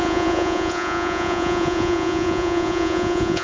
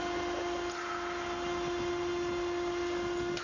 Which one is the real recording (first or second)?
second